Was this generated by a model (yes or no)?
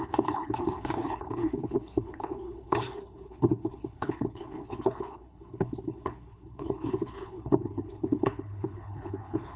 yes